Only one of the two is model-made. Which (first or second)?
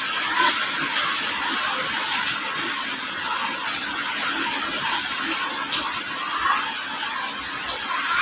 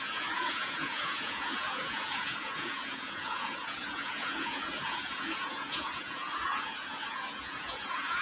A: second